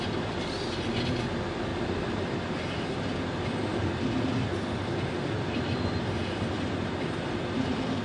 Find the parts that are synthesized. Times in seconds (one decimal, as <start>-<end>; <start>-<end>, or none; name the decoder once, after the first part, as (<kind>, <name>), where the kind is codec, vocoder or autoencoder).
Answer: none